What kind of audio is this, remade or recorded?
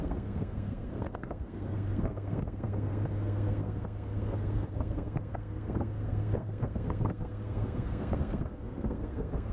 remade